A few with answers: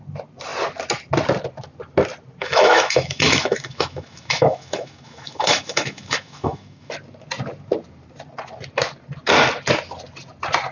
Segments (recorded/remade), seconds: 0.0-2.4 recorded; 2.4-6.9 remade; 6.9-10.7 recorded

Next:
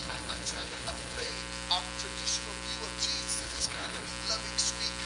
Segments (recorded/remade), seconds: 0.0-1.3 remade; 1.3-3.4 recorded; 3.4-4.1 remade; 4.1-5.1 recorded